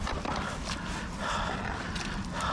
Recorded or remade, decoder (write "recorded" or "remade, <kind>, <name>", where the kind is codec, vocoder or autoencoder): recorded